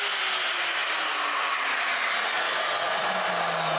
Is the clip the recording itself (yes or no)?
yes